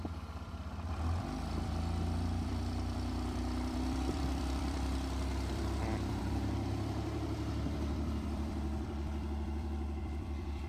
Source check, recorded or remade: remade